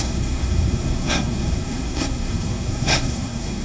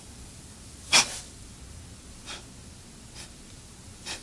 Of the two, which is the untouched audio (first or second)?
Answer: second